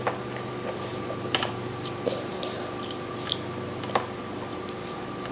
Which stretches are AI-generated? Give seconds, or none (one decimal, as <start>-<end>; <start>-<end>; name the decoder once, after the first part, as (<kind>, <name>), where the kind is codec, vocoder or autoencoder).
0.9-3.4 (vocoder, BigVGAN v2); 4.5-5.3